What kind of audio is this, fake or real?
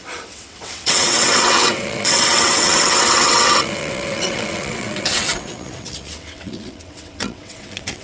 fake